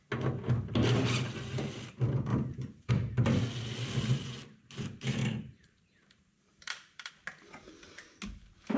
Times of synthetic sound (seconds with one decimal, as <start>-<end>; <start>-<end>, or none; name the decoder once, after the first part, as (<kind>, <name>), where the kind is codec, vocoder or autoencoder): 2.3-2.9 (vocoder, BigVGAN v2); 5.2-7.1

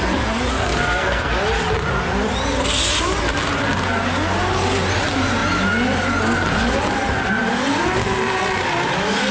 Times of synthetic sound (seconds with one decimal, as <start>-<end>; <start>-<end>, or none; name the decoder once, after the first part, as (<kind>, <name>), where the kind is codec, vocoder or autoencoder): 0.5-1.3 (codec, SNAC)

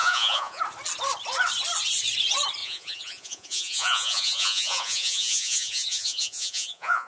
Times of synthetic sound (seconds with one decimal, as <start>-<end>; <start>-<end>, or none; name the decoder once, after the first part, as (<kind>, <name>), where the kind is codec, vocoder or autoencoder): 0.0-0.6 (vocoder, Vocos); 2.6-7.1

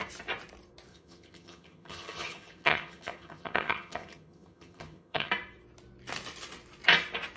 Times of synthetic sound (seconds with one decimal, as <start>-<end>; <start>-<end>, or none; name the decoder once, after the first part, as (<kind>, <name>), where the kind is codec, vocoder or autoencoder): 0.9-5.3 (vocoder, HiFi-GAN)